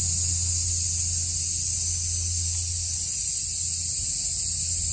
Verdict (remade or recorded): recorded